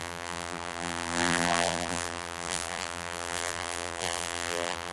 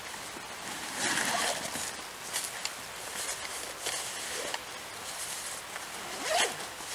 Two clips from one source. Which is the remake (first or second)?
first